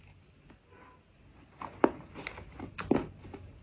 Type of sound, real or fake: real